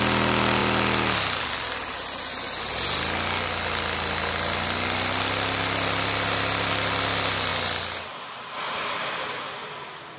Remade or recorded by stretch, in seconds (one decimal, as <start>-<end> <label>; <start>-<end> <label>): 0.0-10.2 recorded